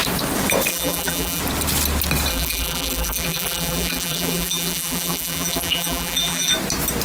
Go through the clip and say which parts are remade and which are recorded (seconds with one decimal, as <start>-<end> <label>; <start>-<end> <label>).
0.0-0.7 recorded; 0.7-1.4 remade; 1.4-2.3 recorded; 2.3-6.5 remade; 6.5-7.0 recorded